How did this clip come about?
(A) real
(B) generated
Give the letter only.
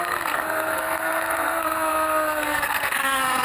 B